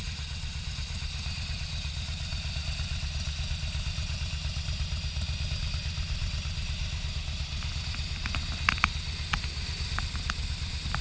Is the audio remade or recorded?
recorded